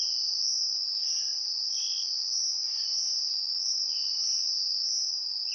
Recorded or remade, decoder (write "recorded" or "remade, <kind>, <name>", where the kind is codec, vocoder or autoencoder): remade, vocoder, BigVGAN v2